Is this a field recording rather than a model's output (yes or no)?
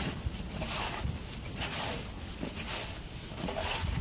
yes